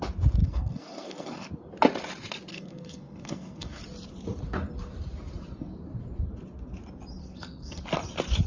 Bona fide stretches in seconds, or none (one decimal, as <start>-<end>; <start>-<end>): 0.0-0.4; 1.5-2.5; 3.8-7.2; 7.8-8.5

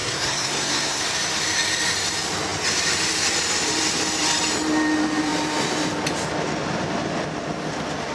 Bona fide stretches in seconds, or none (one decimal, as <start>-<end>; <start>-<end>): 1.0-8.1

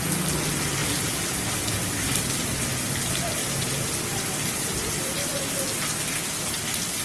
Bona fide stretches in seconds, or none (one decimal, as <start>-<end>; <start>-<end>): 0.0-7.0

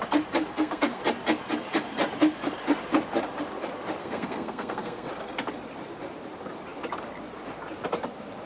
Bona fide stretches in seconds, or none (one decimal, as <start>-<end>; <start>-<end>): 0.0-0.5; 1.0-4.0; 5.1-8.5

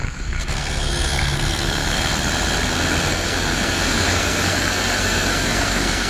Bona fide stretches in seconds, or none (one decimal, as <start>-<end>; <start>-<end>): 2.1-3.1

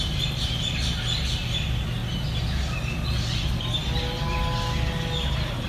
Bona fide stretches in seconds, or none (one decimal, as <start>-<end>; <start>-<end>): 0.0-5.7

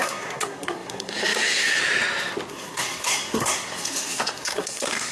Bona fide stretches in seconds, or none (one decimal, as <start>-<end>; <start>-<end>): 1.8-2.5

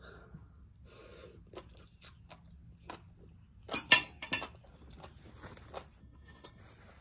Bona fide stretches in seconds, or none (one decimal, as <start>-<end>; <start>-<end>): 0.0-6.0; 6.6-7.0